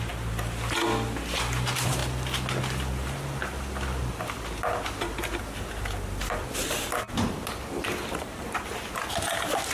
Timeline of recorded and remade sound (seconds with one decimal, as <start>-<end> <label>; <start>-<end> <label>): 0.0-9.7 recorded